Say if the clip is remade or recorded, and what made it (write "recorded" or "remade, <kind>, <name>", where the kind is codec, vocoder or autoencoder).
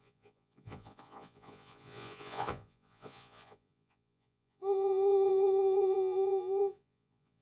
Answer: remade, vocoder, Vocos